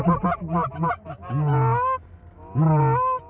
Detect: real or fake real